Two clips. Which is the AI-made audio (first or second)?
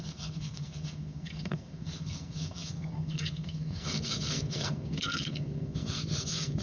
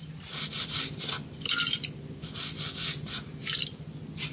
first